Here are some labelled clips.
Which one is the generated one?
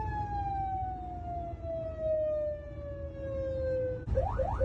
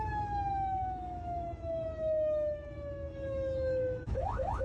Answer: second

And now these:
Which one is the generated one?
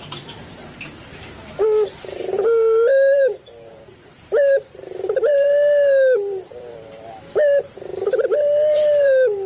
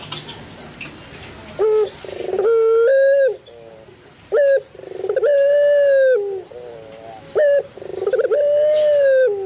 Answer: first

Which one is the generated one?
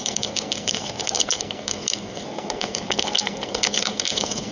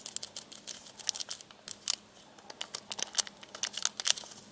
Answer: first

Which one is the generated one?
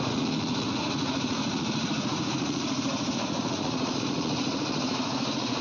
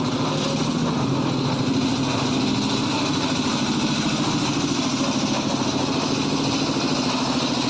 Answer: first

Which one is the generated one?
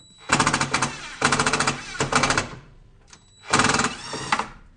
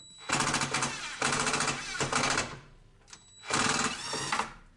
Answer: first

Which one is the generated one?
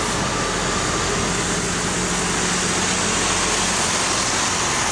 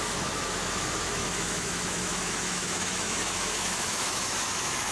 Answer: second